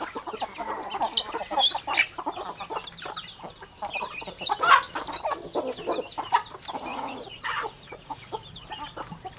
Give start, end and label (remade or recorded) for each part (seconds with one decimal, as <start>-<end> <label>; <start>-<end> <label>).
0.0-6.9 recorded; 6.9-8.4 remade; 8.4-9.4 recorded